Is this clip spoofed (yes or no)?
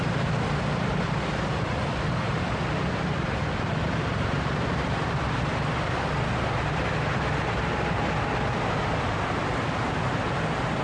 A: no